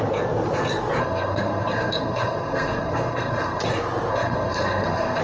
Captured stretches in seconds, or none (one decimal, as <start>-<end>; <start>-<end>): 0.0-1.0; 3.6-4.1